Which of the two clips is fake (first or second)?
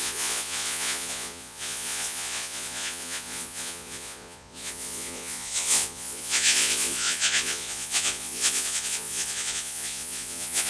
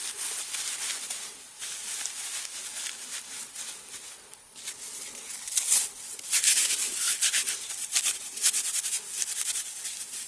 first